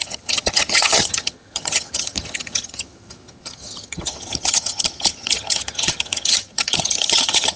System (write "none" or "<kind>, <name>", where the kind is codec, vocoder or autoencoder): vocoder, HiFi-GAN